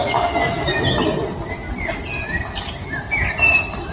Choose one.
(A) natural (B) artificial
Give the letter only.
A